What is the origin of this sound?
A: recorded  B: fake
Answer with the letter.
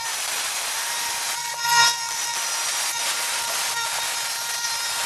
A